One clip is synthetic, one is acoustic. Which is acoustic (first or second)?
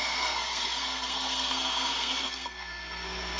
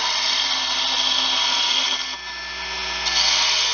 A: second